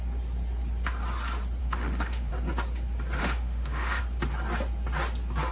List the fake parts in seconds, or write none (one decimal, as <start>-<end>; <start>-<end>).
1.6-2.3; 3.2-4.0